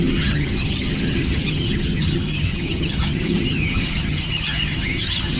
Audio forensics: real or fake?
fake